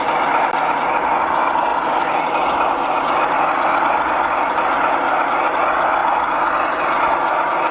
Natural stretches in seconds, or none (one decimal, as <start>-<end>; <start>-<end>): 0.0-7.7